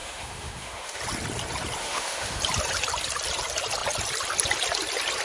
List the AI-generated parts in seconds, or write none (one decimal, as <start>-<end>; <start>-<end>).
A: 0.0-1.0; 1.8-2.4